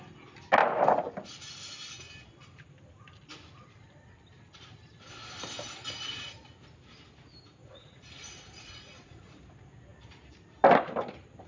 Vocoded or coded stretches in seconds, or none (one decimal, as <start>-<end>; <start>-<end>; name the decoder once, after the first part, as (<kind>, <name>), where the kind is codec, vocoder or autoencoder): 7.6-9.4 (vocoder, Vocos)